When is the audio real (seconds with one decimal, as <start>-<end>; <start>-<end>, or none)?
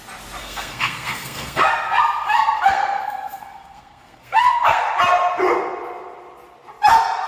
0.0-0.4; 4.8-7.3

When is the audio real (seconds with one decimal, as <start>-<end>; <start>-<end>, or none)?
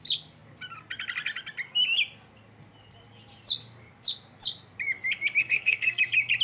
0.0-5.4; 6.0-6.4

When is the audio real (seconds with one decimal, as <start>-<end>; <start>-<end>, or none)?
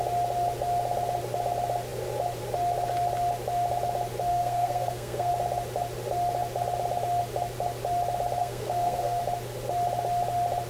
0.0-4.3; 5.3-8.4; 9.2-10.7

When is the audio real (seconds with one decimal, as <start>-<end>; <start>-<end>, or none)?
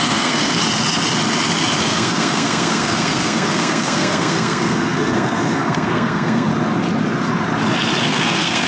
0.6-1.8; 6.5-8.0